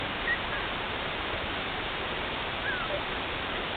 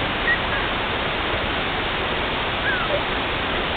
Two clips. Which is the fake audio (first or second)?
first